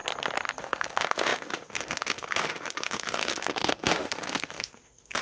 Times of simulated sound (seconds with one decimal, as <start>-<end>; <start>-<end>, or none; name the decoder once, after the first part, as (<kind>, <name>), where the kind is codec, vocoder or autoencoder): 0.6-5.2 (autoencoder, DAC-VAE)